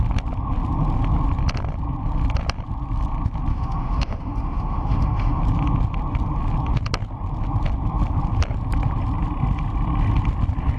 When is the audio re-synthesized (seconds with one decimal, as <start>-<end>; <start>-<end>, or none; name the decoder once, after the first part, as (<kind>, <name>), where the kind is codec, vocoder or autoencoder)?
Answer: 3.5-5.4 (autoencoder, DAC-VAE)